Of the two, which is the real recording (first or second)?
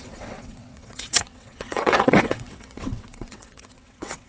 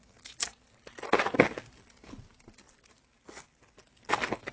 second